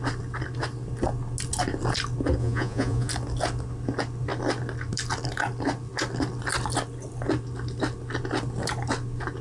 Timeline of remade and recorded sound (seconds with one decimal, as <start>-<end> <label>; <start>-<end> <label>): 0.0-2.4 recorded; 2.4-3.1 remade; 3.1-9.4 recorded